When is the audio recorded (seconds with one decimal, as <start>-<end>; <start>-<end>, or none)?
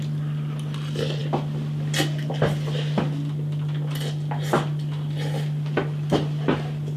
0.0-7.0